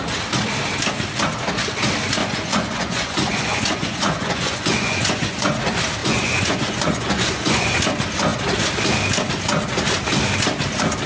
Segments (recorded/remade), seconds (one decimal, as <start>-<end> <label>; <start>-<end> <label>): 0.0-2.2 recorded; 2.2-5.6 remade; 5.6-6.0 recorded; 6.0-7.8 remade; 7.8-11.1 recorded